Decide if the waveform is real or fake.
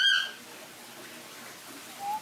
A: real